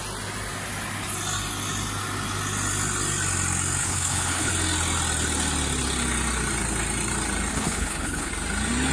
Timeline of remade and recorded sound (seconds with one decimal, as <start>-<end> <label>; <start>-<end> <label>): 0.0-3.8 recorded; 3.8-4.5 remade; 4.5-7.5 recorded; 7.5-8.3 remade; 8.3-8.9 recorded